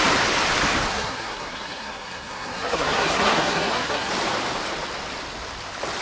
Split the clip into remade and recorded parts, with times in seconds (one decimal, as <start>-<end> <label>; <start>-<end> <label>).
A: 0.0-0.9 recorded; 0.9-4.1 remade; 4.1-6.0 recorded